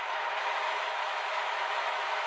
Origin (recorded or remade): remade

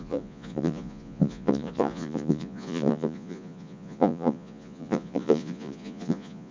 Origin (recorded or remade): remade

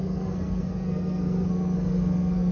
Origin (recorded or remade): remade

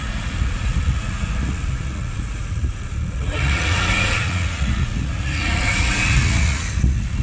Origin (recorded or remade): remade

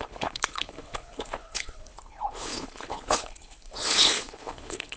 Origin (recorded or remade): remade